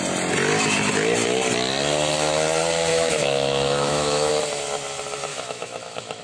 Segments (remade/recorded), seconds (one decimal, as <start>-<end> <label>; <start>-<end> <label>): 0.0-2.9 recorded; 2.9-4.3 remade; 4.3-5.3 recorded; 5.3-6.2 remade